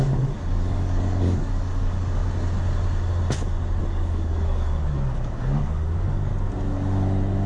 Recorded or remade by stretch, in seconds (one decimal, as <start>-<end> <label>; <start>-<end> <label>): 0.0-2.2 remade; 2.2-3.8 recorded; 3.8-6.3 remade; 6.3-7.5 recorded